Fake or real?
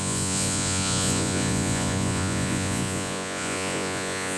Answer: fake